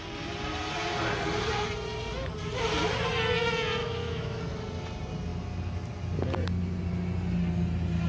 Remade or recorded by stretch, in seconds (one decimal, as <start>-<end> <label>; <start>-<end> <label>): 0.0-3.8 recorded; 3.8-4.4 remade; 4.4-8.1 recorded